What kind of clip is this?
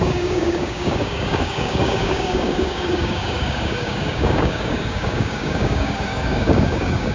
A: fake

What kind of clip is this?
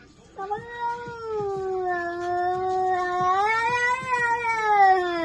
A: real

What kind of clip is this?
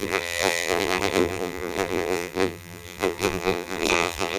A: fake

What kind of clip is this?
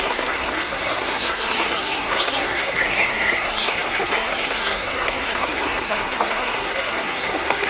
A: fake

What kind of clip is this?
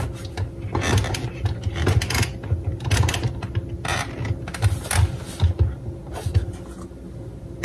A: real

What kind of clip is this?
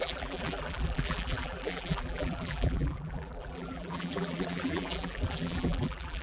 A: fake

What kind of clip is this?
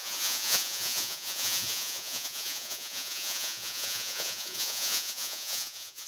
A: fake